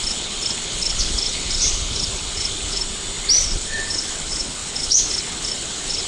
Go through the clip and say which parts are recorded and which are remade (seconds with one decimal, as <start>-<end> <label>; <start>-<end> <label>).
0.0-2.8 remade; 2.8-3.4 recorded; 3.4-6.1 remade